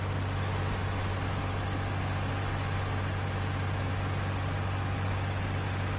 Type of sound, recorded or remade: recorded